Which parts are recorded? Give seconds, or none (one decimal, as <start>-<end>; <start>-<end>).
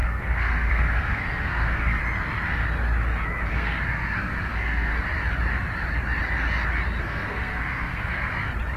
2.0-3.5; 4.9-7.0; 8.3-8.8